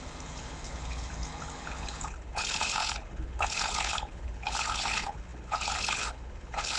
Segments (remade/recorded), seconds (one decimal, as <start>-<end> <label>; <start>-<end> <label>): 0.0-6.8 remade